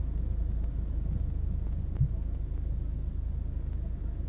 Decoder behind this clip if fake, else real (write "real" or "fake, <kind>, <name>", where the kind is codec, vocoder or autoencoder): real